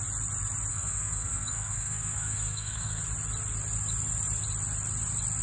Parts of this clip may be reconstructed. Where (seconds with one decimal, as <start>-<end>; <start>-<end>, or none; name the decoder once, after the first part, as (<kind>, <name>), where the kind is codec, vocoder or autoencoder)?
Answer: 0.7-3.0 (codec, SNAC)